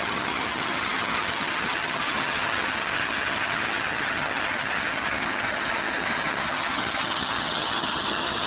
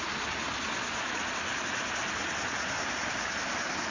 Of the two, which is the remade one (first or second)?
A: first